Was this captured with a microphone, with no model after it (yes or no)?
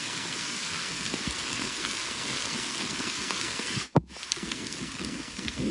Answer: no